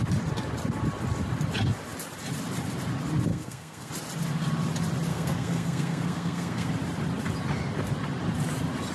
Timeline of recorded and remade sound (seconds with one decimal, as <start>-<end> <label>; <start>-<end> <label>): 0.0-3.3 recorded; 3.3-3.9 remade; 3.9-5.1 recorded; 5.1-6.7 remade; 6.7-8.9 recorded